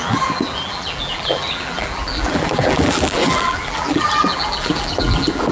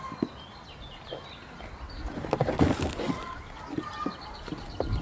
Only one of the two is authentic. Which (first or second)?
second